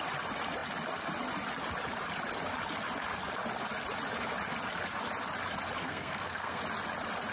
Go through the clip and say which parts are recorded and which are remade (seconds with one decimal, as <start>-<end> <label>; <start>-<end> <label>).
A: 0.0-5.8 recorded; 5.8-6.6 remade; 6.6-7.3 recorded